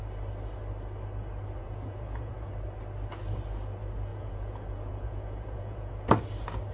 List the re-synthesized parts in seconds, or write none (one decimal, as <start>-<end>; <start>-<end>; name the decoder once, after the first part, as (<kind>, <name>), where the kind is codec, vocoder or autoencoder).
1.6-2.5 (vocoder, Vocos); 4.1-5.9